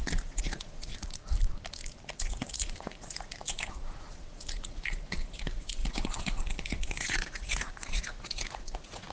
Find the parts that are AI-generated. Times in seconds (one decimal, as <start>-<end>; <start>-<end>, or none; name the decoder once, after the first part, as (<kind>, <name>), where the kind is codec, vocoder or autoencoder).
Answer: 0.0-0.9 (vocoder, Vocos); 2.2-9.1